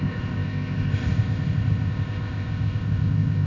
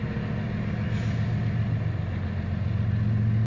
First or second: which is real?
second